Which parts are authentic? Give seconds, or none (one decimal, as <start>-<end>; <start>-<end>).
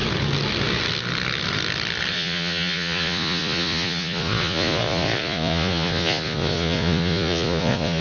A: 0.0-2.1